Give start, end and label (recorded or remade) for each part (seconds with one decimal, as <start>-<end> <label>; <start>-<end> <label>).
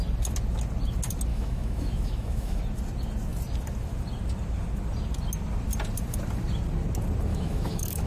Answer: 0.0-1.3 recorded; 1.3-2.6 remade; 2.6-7.3 recorded; 7.3-8.1 remade